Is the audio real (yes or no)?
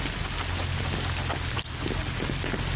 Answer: yes